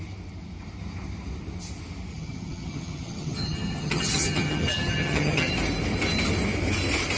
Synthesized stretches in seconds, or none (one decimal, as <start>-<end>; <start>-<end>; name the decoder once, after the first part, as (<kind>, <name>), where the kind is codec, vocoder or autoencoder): 2.1-5.5 (vocoder, HiFi-GAN)